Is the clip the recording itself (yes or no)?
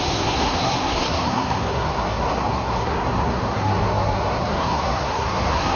no